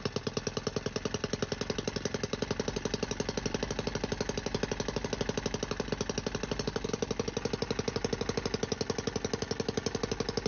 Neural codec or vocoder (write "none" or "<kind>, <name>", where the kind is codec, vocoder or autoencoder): none